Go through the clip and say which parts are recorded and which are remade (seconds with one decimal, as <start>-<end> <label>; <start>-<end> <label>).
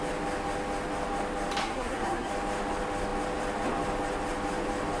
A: 0.0-1.6 recorded; 1.6-2.3 remade; 2.3-5.0 recorded